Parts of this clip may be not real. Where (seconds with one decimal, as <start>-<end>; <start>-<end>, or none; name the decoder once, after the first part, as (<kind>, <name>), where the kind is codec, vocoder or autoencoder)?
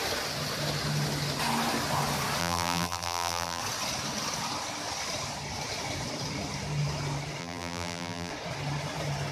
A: 2.4-3.6 (vocoder, BigVGAN v2); 7.4-8.3